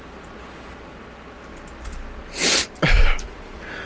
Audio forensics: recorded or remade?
recorded